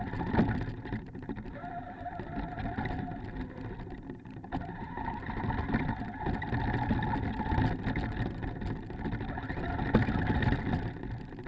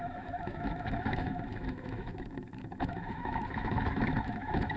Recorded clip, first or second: first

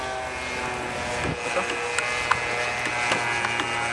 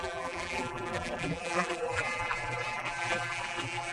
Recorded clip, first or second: first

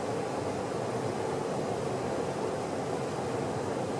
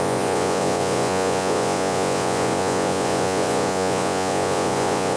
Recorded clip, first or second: first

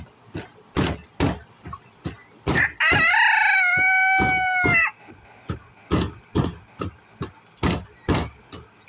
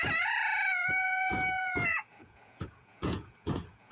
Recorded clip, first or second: first